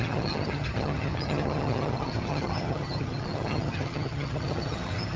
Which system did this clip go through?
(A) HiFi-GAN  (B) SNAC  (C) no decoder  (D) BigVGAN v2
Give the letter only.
A